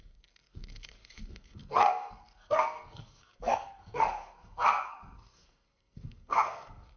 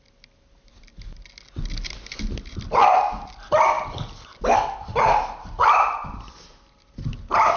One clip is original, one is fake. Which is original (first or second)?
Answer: second